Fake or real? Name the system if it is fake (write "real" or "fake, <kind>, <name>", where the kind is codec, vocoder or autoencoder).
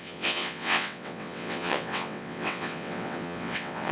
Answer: fake, vocoder, WaveNeXt